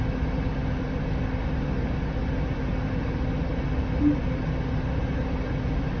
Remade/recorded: recorded